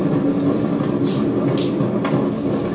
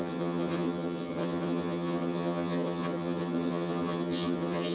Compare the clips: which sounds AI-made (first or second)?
second